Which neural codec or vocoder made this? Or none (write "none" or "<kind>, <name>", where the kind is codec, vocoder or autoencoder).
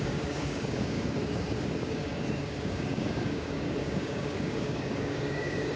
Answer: codec, DAC